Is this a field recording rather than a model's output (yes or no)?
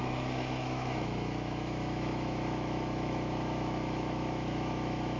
no